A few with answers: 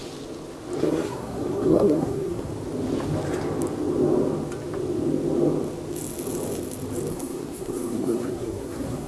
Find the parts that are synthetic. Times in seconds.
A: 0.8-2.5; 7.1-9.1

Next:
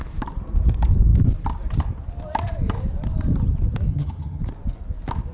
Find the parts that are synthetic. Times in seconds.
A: 3.9-4.4